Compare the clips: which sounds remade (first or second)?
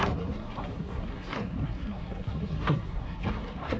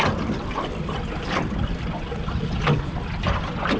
first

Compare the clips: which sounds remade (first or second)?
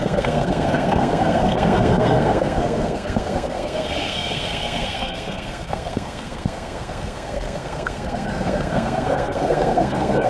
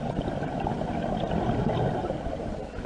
first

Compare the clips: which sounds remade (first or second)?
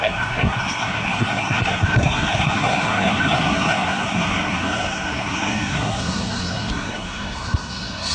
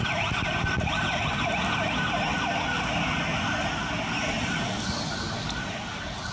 first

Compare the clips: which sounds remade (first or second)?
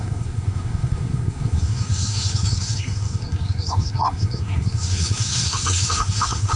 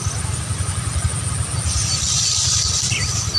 first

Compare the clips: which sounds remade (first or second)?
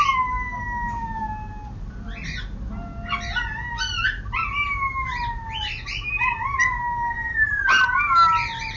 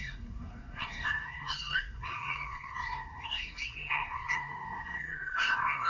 second